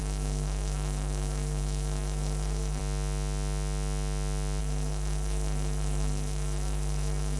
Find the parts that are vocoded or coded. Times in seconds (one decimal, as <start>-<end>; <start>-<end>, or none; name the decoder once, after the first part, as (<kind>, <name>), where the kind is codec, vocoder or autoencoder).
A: 0.0-2.8 (codec, SNAC); 4.6-7.4